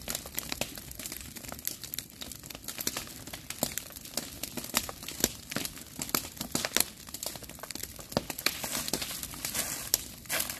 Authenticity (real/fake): real